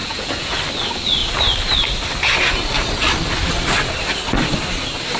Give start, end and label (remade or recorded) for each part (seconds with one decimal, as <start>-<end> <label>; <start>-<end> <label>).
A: 0.0-0.6 remade; 0.6-5.2 recorded